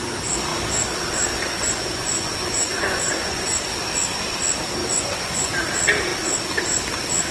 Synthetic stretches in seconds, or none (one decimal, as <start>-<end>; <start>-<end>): 1.6-3.6; 4.8-5.5